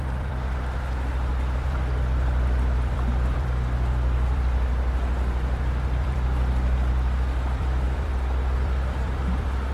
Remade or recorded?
remade